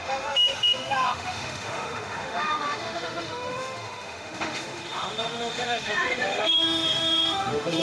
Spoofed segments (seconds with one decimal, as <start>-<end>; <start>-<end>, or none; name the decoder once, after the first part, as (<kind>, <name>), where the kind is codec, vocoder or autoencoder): 0.0-7.8 (autoencoder, DAC-VAE)